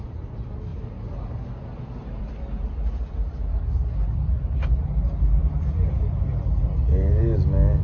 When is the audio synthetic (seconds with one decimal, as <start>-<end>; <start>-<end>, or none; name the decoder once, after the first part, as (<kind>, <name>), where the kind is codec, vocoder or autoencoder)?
none